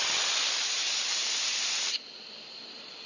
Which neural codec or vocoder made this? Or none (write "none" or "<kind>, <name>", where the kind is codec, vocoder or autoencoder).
none